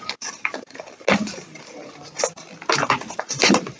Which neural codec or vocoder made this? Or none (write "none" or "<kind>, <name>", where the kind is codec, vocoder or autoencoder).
none